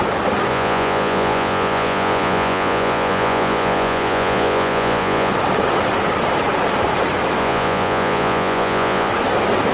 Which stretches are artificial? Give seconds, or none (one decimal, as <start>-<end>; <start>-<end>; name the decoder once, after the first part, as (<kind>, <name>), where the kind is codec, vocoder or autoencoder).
0.5-5.3 (vocoder, Vocos); 7.4-9.1